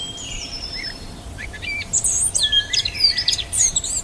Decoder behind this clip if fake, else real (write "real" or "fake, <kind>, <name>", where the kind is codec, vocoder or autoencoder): fake, vocoder, BigVGAN v2